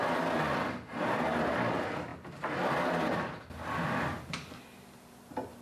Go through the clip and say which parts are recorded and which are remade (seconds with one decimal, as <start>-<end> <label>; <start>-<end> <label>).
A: 0.0-5.6 recorded